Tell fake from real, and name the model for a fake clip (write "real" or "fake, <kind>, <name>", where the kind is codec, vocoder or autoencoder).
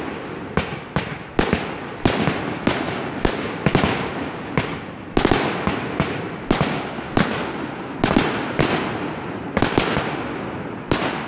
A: real